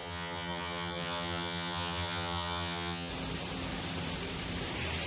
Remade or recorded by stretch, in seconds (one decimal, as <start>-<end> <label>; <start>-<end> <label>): 0.0-3.1 remade; 3.1-5.1 recorded

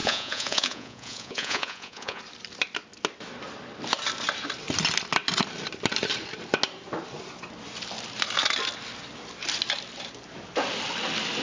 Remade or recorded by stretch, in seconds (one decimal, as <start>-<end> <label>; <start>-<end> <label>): 0.0-2.2 remade; 2.2-11.4 recorded

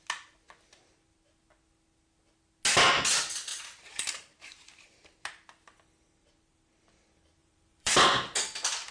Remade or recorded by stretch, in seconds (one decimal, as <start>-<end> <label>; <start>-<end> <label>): 0.0-3.5 recorded; 3.5-4.7 remade; 4.7-7.4 recorded; 7.4-7.9 remade; 7.9-8.9 recorded

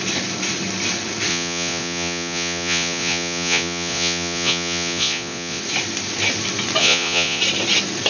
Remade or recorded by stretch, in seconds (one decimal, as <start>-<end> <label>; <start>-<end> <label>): 0.0-1.3 recorded; 1.3-5.6 remade; 5.6-6.8 recorded; 6.8-7.4 remade; 7.4-8.1 recorded

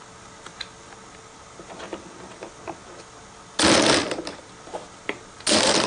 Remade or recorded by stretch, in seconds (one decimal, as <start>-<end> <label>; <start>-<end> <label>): 0.0-1.9 recorded; 1.9-2.5 remade; 2.5-4.0 recorded; 4.0-4.5 remade; 4.5-5.9 recorded

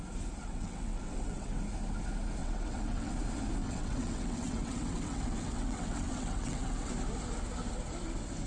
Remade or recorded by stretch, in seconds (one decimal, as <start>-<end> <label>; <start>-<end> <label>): 0.0-0.4 recorded; 0.4-1.6 remade; 1.6-2.4 recorded; 2.4-3.1 remade; 3.1-3.6 recorded; 3.6-6.9 remade; 6.9-8.5 recorded